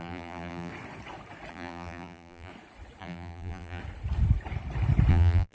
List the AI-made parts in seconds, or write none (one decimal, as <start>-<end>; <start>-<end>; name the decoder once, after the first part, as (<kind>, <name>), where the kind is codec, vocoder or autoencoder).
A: 0.0-0.7 (vocoder, BigVGAN v2); 1.5-2.5; 3.0-3.8; 5.1-5.5